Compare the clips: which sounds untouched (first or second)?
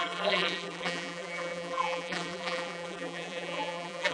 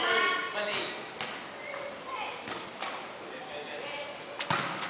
second